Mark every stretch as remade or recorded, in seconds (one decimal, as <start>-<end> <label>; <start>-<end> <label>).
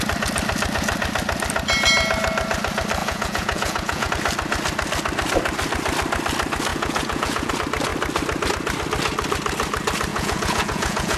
0.0-3.0 recorded; 3.0-4.1 remade; 4.1-6.7 recorded; 6.7-7.5 remade; 7.5-10.1 recorded; 10.1-11.2 remade